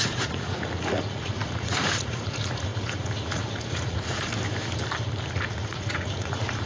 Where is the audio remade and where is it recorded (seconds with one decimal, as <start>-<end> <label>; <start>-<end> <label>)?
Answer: 0.0-4.3 remade; 4.3-5.3 recorded; 5.3-6.7 remade

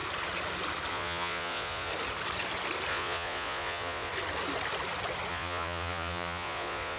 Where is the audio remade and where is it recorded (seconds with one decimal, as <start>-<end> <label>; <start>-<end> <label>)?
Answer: 0.0-0.9 recorded; 0.9-1.9 remade; 1.9-2.9 recorded; 2.9-4.1 remade; 4.1-5.3 recorded; 5.3-7.0 remade

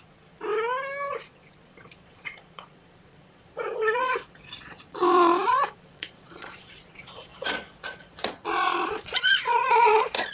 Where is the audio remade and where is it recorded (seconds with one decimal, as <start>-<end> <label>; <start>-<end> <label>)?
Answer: 0.0-0.4 remade; 0.4-1.1 recorded; 1.1-10.3 remade

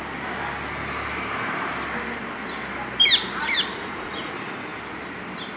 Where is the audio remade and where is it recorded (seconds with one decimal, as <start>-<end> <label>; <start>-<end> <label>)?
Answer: 0.0-3.7 recorded; 3.7-4.3 remade; 4.3-5.6 recorded

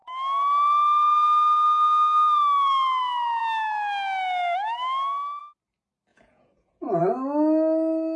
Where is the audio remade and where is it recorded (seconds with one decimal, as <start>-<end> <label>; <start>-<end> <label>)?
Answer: 0.0-6.1 recorded; 6.1-7.0 remade; 7.0-8.2 recorded